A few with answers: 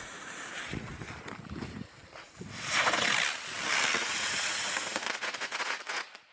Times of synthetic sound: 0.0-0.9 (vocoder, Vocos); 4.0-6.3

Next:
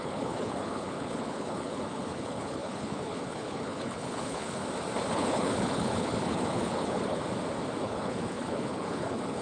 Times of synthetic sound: 0.0-4.6 (codec, HILCodec); 5.1-7.2; 7.8-9.4

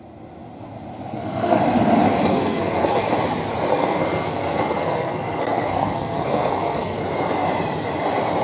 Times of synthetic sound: 1.1-1.6 (codec, SNAC); 2.3-3.1; 3.7-7.0

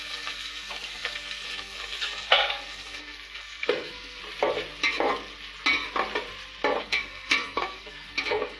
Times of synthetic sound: 0.0-4.2 (codec, SNAC); 6.8-8.6

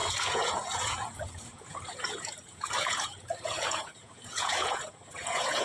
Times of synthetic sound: 0.0-5.6 (vocoder, Vocos)

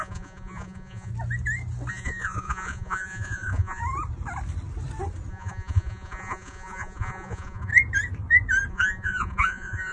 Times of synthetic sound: 0.0-1.1 (vocoder, Vocos); 1.9-3.8; 5.3-7.7; 8.7-9.9

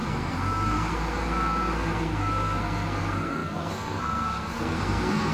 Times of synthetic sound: 0.0-5.3 (codec, SNAC)

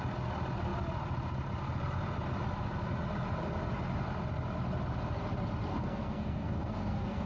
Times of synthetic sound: 5.7-7.3 (codec, SNAC)